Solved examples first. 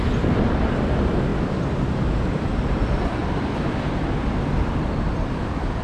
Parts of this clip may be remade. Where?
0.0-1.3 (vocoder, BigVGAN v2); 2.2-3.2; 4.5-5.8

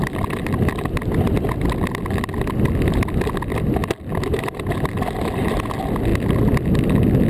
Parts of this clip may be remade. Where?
0.0-1.3 (vocoder, BigVGAN v2); 3.8-4.4

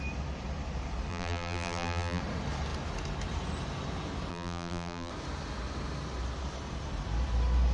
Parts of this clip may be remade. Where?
1.1-2.2 (vocoder, BigVGAN v2); 4.3-5.1

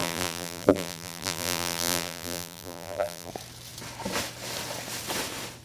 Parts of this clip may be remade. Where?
0.0-3.3 (vocoder, BigVGAN v2)

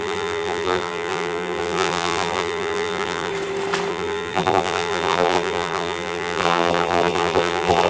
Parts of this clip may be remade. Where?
0.0-3.3 (vocoder, BigVGAN v2); 3.9-7.9

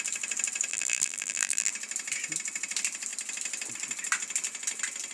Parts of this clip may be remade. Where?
0.7-1.7 (vocoder, BigVGAN v2)